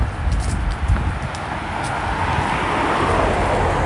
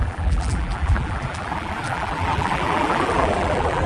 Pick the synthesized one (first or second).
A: second